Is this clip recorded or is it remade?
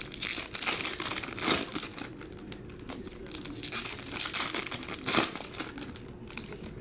recorded